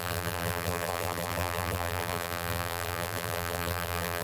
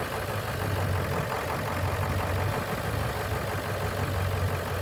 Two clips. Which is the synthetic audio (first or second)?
first